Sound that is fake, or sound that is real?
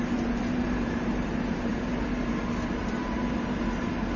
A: fake